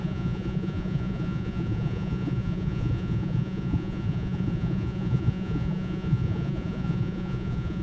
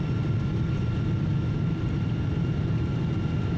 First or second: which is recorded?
second